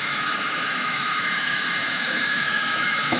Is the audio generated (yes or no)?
yes